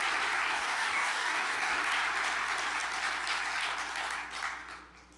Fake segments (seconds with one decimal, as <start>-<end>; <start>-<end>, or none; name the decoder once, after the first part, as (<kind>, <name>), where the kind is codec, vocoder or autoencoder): 0.5-1.8 (codec, DAC)